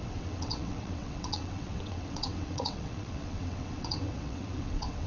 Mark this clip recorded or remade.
remade